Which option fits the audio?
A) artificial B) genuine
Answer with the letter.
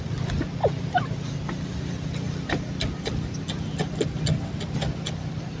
B